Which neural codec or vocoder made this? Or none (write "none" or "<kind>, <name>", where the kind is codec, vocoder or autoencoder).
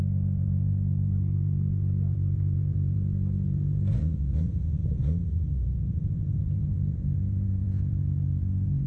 vocoder, Vocos